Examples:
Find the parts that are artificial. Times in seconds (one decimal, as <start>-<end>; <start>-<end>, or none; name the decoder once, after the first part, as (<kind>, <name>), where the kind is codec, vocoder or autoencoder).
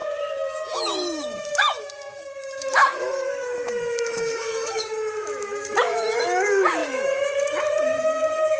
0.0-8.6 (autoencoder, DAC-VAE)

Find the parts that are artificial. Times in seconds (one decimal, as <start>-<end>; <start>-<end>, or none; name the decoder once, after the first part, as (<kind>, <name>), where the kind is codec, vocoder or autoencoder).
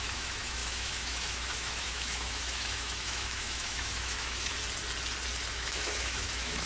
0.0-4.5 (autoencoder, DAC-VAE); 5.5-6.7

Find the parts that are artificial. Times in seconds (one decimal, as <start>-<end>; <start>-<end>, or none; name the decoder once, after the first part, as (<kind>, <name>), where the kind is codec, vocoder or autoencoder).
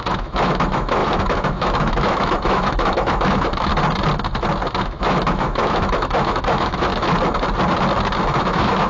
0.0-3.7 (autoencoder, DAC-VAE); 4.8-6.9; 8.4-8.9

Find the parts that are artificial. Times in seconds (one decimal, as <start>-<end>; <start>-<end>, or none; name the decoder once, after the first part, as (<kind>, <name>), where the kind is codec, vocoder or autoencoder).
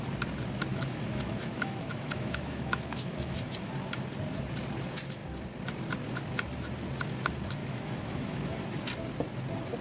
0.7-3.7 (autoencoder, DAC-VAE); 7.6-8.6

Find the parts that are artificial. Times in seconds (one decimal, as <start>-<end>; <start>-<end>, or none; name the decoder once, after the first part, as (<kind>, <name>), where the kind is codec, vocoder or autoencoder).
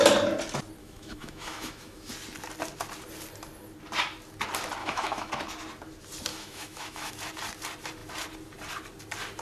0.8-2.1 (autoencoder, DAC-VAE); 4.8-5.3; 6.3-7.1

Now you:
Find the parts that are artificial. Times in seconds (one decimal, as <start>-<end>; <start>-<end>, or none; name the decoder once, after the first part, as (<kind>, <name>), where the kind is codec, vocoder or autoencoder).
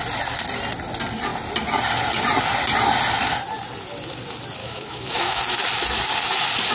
4.6-5.4 (autoencoder, DAC-VAE)